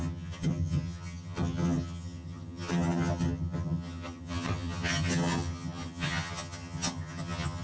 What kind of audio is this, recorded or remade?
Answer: remade